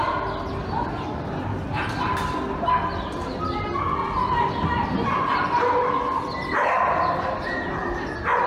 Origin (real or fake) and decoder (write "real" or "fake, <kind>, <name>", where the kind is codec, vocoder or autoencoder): real